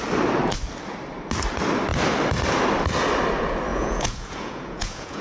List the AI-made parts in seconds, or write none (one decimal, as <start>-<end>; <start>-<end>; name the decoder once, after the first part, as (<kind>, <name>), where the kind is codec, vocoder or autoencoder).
3.7-5.2 (vocoder, Vocos)